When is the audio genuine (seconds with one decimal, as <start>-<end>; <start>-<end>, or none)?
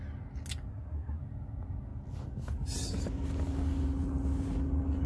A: 0.0-0.7; 1.2-5.1